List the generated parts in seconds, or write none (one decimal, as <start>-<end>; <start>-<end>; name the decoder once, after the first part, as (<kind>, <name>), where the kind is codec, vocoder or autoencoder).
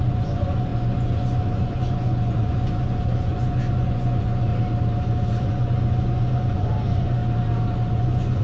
0.0-4.5 (vocoder, Vocos); 5.4-7.2; 7.9-8.4